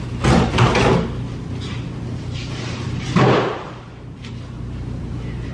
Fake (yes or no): no